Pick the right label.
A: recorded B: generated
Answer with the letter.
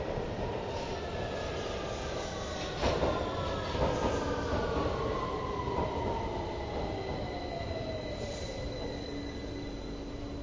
A